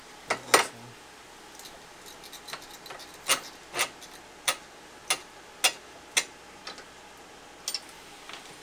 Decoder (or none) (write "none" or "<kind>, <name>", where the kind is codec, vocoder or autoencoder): none